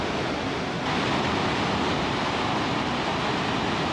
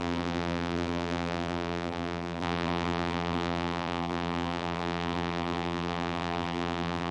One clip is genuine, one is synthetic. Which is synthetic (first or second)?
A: second